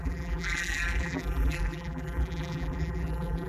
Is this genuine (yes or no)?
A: no